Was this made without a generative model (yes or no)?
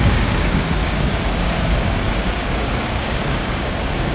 no